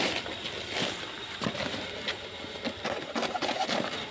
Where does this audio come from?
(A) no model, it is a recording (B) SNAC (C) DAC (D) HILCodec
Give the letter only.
A